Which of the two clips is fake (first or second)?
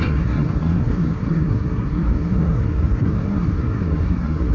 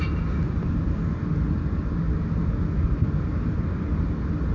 first